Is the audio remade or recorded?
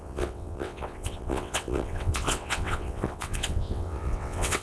remade